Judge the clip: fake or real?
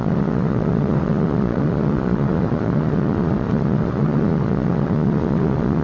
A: fake